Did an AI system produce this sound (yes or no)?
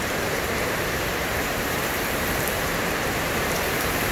yes